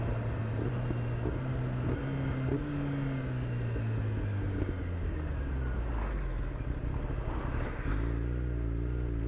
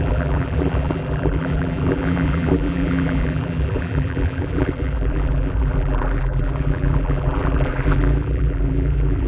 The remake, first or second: second